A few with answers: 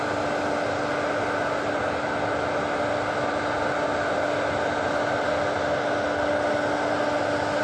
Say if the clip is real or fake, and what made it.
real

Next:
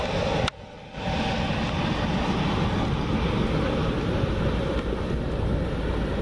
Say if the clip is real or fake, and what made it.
real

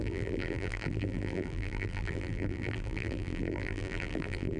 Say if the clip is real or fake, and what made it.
fake, vocoder, BigVGAN v2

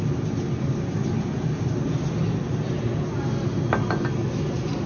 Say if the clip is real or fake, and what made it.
real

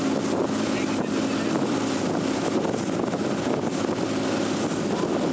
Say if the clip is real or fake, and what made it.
real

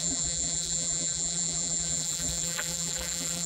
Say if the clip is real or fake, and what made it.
fake, vocoder, BigVGAN v2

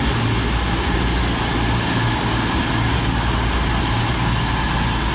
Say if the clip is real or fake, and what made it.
real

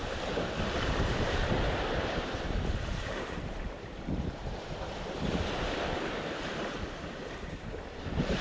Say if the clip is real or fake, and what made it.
fake, vocoder, BigVGAN v2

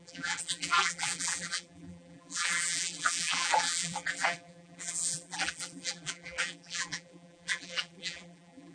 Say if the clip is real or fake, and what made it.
fake, vocoder, BigVGAN v2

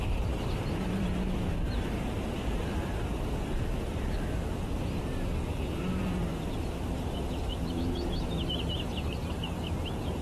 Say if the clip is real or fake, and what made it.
fake, vocoder, BigVGAN v2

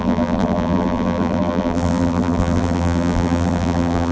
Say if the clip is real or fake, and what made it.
fake, vocoder, BigVGAN v2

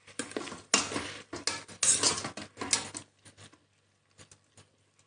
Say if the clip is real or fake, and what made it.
real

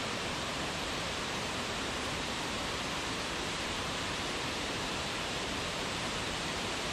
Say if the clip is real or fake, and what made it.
fake, vocoder, BigVGAN v2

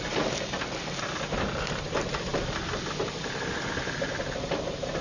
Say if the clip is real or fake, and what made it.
real